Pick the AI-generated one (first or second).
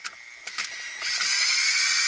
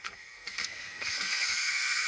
second